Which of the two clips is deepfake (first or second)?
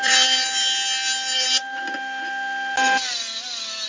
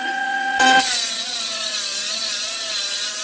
second